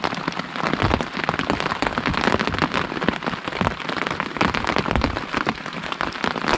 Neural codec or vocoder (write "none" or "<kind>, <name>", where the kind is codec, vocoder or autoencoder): none